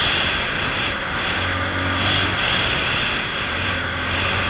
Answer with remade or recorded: recorded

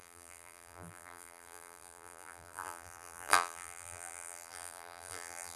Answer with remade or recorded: remade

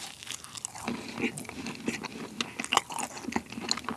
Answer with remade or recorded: recorded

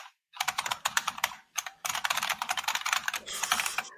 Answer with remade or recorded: remade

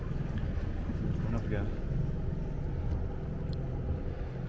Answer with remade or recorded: recorded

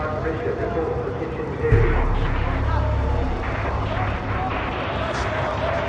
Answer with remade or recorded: recorded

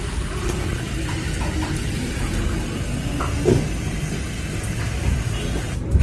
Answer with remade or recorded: recorded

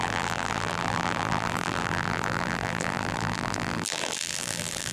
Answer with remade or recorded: remade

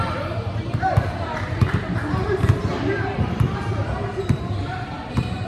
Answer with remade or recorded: remade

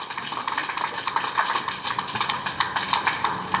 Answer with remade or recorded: recorded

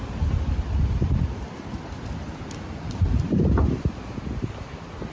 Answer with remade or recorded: recorded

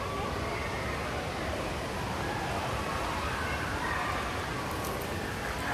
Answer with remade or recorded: recorded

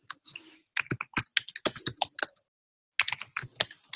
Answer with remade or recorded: recorded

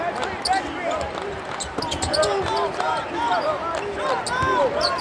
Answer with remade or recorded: recorded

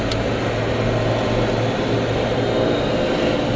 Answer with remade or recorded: recorded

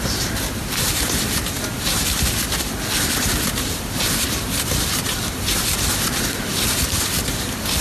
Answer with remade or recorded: remade